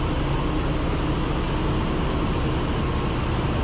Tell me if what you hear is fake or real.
real